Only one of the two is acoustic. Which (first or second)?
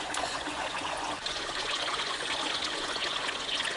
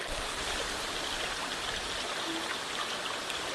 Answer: second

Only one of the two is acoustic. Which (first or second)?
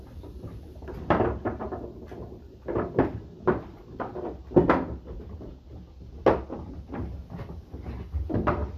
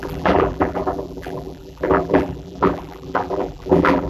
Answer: first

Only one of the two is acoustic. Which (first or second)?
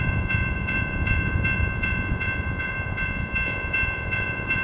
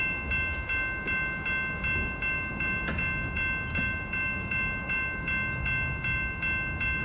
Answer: second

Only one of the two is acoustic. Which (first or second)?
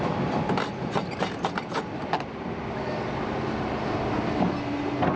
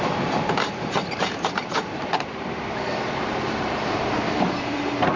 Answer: first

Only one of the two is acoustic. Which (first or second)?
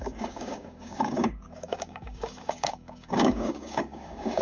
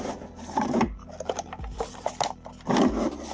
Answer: second